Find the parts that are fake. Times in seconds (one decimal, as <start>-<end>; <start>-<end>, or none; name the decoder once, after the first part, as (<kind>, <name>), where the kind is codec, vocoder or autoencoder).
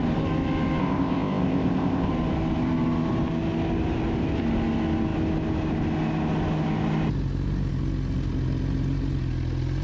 0.8-2.1 (codec, ZipCodec)